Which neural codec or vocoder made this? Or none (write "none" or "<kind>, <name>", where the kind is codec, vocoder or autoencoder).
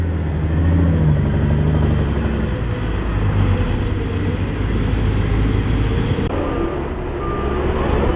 none